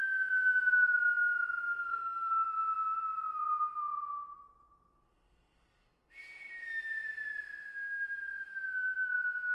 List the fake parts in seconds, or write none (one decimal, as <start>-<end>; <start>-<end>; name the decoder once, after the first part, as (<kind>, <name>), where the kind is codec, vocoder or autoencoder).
1.7-2.3 (codec, SNAC)